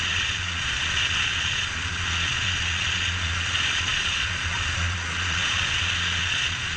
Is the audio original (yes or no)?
no